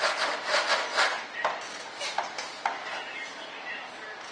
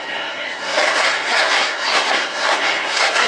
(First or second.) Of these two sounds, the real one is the first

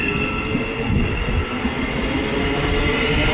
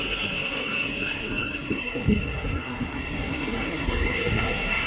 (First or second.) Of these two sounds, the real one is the first